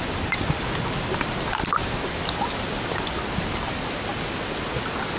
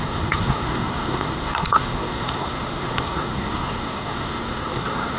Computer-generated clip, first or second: second